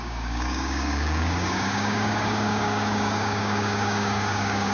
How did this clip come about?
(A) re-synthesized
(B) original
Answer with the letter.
A